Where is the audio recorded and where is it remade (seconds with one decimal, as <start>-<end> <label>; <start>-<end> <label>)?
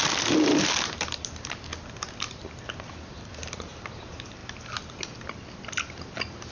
0.0-6.5 recorded